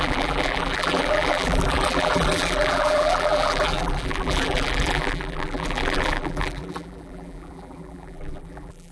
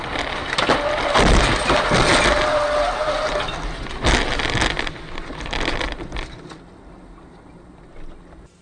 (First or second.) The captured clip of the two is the second